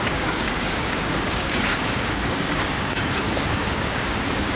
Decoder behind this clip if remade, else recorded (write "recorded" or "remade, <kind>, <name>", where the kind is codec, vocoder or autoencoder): remade, codec, DAC